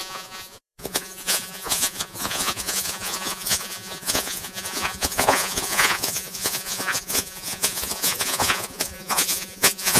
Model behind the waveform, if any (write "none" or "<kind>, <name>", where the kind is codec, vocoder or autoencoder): vocoder, Vocos